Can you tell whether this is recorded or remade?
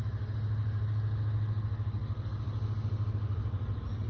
recorded